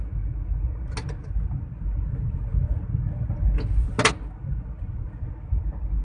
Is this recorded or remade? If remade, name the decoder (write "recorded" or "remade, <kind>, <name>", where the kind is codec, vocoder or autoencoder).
recorded